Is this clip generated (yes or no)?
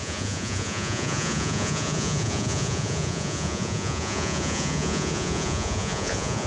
yes